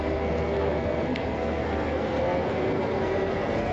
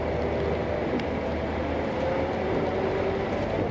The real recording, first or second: second